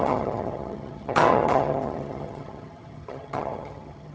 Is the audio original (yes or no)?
no